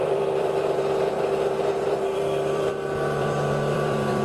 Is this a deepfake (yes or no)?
yes